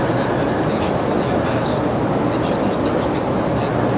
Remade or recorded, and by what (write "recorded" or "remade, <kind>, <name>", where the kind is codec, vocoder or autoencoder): recorded